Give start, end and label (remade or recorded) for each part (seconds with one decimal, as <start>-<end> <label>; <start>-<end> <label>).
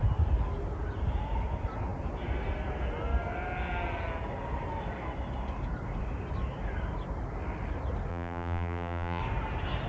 0.0-8.1 recorded; 8.1-9.2 remade; 9.2-9.9 recorded